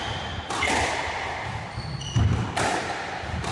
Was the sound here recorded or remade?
recorded